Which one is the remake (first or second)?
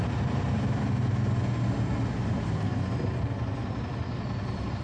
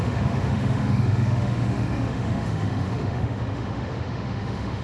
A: second